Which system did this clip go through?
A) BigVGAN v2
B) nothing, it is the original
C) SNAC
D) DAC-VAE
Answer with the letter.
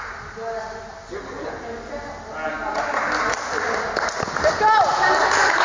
B